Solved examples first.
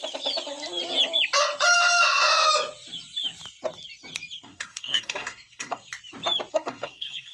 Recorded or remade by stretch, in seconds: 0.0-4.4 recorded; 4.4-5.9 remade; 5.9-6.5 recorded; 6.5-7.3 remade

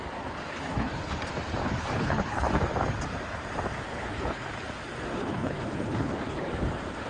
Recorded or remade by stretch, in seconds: 0.0-0.5 recorded; 0.5-1.2 remade; 1.2-1.6 recorded; 1.6-2.5 remade; 2.5-3.9 recorded; 3.9-4.5 remade; 4.5-5.1 recorded; 5.1-6.5 remade; 6.5-7.1 recorded

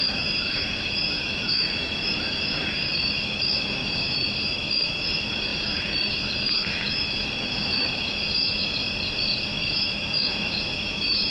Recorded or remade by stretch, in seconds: 0.0-8.8 remade; 8.8-9.5 recorded; 9.5-11.3 remade

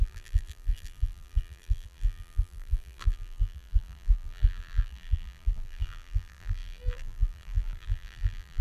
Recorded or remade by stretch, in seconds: 0.0-8.6 remade

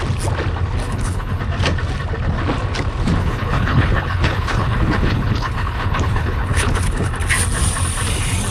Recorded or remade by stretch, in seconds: 0.0-0.8 recorded; 0.8-1.4 remade; 1.4-3.2 recorded; 3.2-7.1 remade; 7.1-8.5 recorded

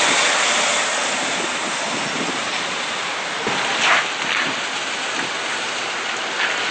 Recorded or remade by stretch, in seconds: 0.0-6.7 recorded